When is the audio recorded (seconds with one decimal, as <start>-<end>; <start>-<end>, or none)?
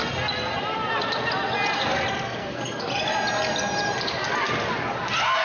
0.0-2.4; 2.9-5.4